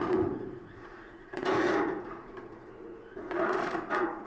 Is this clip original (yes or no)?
no